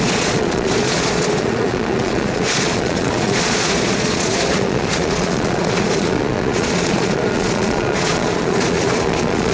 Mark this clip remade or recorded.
remade